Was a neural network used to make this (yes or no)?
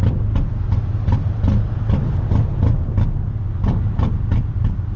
no